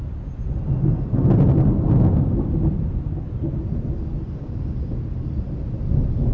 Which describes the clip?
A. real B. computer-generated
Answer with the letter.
A